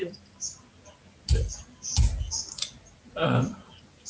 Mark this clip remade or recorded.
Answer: recorded